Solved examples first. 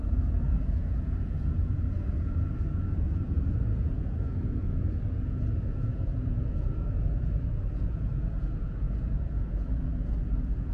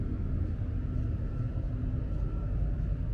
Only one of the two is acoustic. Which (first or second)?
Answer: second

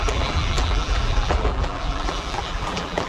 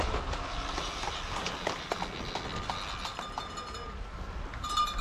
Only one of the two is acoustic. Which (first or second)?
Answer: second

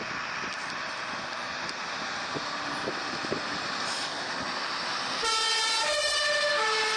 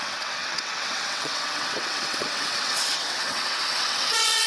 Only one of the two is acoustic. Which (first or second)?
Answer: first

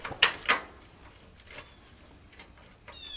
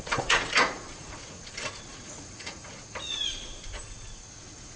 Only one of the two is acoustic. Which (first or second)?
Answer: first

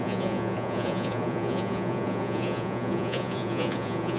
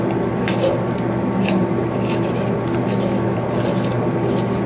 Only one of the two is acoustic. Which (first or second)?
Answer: second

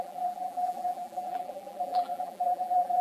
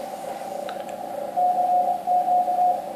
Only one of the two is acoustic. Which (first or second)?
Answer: second